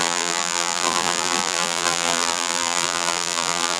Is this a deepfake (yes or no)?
yes